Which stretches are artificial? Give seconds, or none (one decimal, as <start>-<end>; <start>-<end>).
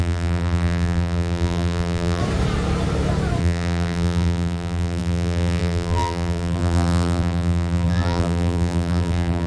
0.0-2.2; 3.4-9.5